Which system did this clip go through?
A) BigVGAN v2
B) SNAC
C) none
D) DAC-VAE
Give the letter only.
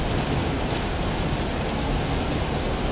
C